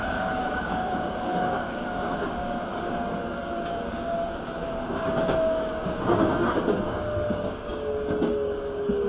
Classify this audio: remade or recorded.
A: remade